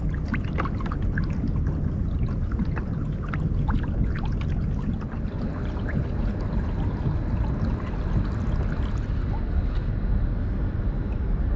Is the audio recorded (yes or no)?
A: yes